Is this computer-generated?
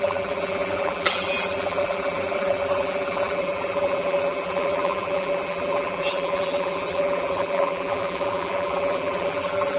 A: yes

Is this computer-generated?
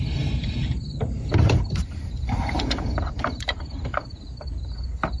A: yes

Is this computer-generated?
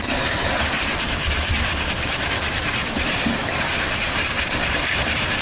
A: yes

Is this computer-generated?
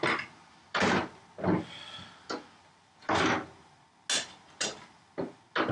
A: no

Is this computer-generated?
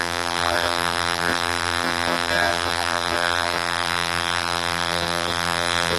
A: yes